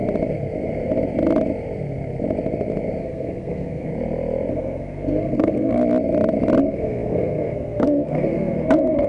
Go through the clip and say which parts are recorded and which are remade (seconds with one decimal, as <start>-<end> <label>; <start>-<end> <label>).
0.0-3.0 recorded; 3.0-3.9 remade; 3.9-4.5 recorded; 4.5-5.8 remade; 5.8-6.6 recorded; 6.6-9.1 remade